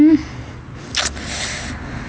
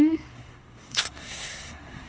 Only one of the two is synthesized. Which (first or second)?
second